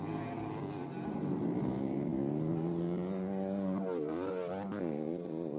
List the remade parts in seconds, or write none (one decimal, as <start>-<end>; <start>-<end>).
none